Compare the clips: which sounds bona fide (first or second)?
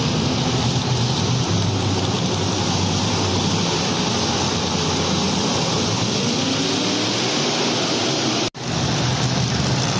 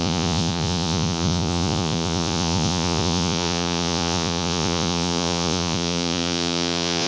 first